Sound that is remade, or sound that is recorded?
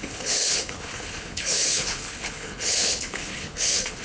remade